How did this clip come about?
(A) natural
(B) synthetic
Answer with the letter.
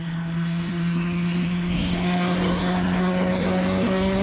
B